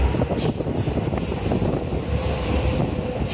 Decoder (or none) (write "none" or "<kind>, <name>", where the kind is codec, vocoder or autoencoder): none